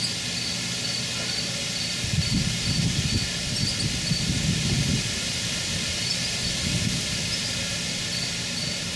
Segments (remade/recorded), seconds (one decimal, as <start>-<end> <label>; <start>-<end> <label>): 0.0-9.0 recorded